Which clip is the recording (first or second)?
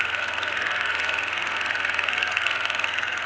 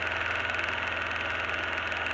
second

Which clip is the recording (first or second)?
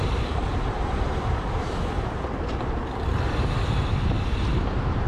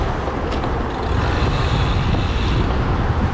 second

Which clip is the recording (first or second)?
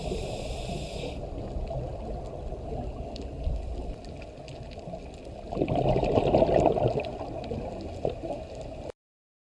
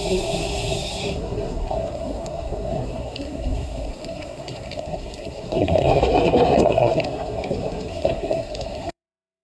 first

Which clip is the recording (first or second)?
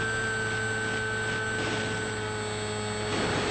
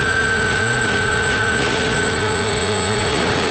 first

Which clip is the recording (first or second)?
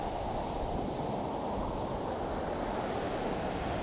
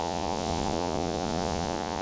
first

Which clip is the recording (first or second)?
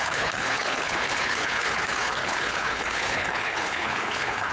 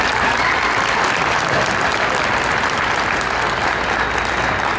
second